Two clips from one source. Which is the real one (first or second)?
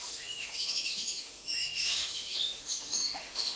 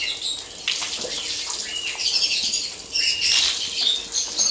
second